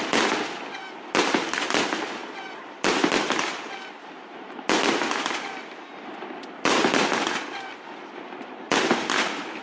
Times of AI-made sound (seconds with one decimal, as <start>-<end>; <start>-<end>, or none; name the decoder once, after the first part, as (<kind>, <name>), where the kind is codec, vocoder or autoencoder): none